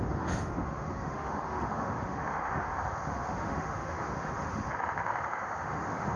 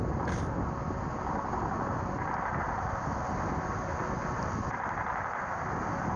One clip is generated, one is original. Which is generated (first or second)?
first